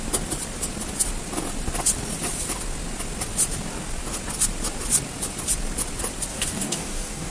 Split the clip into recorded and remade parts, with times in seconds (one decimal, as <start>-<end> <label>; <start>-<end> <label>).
0.0-6.3 recorded; 6.3-7.3 remade